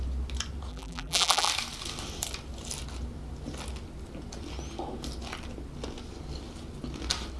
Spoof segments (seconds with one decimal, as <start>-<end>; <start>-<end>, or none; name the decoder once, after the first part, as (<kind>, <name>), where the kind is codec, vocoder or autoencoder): 0.7-1.5 (vocoder, BigVGAN v2)